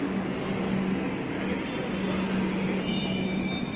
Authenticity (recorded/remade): recorded